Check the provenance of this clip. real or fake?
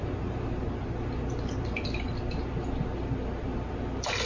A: real